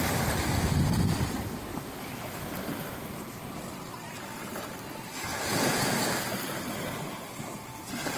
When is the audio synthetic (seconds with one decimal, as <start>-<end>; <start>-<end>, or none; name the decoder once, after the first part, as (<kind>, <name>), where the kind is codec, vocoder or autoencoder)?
5.3-5.9 (vocoder, Vocos)